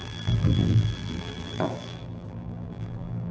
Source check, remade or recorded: remade